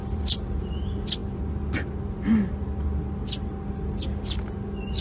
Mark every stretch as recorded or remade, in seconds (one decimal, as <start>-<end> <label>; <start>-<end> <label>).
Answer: 0.0-0.6 remade; 0.6-5.0 recorded